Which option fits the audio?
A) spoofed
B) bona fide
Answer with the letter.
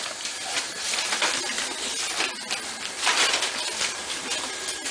B